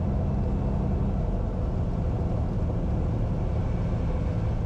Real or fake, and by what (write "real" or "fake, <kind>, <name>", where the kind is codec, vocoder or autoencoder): real